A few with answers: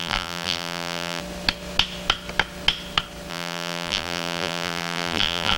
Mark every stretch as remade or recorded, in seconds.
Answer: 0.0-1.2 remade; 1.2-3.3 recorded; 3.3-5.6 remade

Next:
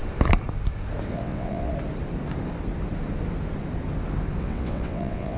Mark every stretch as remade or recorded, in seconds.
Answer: 0.0-1.1 recorded; 1.1-1.7 remade; 1.7-4.4 recorded; 4.4-5.4 remade

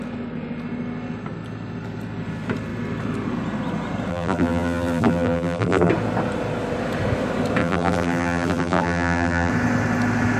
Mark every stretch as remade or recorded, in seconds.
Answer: 0.0-4.1 recorded; 4.1-5.9 remade; 5.9-7.6 recorded; 7.6-9.5 remade; 9.5-10.4 recorded

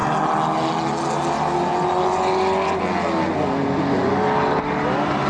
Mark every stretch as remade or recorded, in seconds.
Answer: 0.0-5.3 recorded

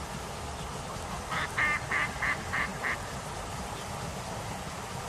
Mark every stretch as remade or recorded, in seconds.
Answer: 0.0-5.1 remade

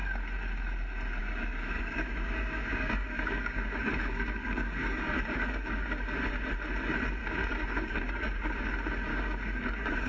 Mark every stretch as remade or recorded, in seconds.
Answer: 0.0-1.2 recorded; 1.2-6.0 remade; 6.0-7.2 recorded; 7.2-8.7 remade; 8.7-9.1 recorded; 9.1-10.1 remade